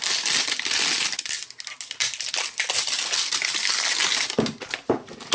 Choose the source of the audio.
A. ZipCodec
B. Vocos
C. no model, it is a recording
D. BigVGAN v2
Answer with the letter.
C